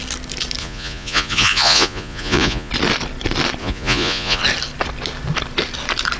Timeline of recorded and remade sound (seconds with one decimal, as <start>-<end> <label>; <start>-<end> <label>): 0.0-0.6 recorded; 0.6-2.7 remade; 2.7-3.6 recorded; 3.6-4.4 remade; 4.4-6.2 recorded